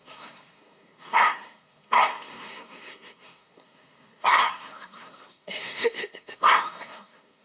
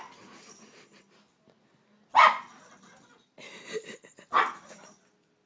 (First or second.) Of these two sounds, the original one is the second